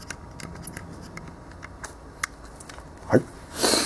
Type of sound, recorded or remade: recorded